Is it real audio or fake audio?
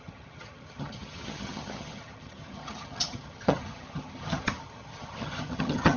fake